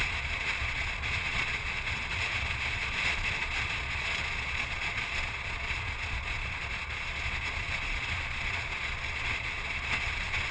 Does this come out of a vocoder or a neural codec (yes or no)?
yes